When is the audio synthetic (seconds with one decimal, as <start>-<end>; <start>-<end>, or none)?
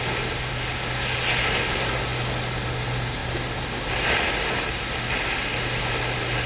none